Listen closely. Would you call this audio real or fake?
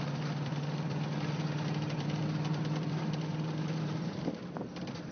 fake